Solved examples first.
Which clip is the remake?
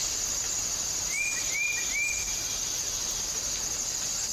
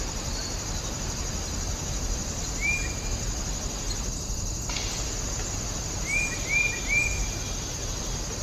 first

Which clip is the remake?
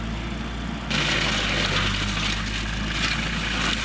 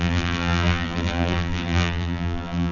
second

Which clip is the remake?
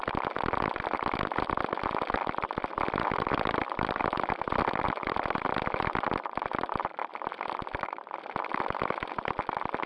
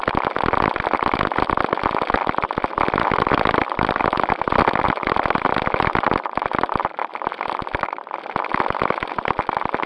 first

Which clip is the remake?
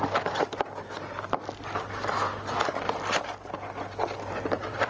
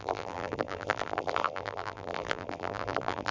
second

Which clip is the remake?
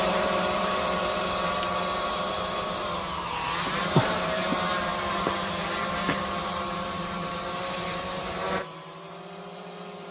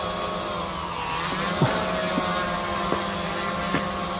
first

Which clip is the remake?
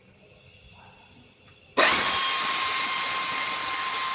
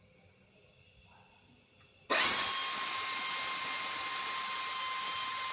first